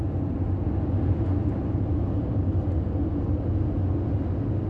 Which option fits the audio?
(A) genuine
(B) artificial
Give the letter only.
A